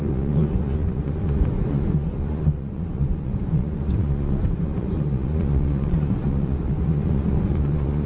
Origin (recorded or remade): remade